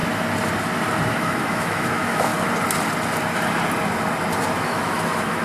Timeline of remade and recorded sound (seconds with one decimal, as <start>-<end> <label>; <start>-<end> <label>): 0.0-1.1 recorded; 1.1-2.3 remade; 2.3-4.5 recorded; 4.5-5.4 remade